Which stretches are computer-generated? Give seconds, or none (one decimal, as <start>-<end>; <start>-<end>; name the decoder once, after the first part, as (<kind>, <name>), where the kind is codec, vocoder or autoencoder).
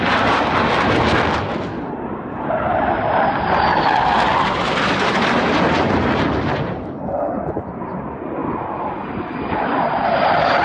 none